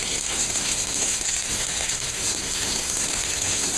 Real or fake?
fake